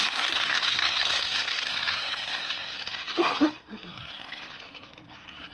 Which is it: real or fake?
fake